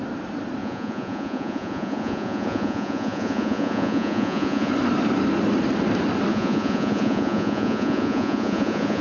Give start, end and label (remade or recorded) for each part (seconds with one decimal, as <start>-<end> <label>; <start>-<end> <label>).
0.0-0.6 recorded; 0.6-4.7 remade; 4.7-6.3 recorded; 6.3-9.0 remade